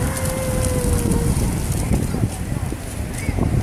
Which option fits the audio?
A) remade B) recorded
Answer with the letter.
B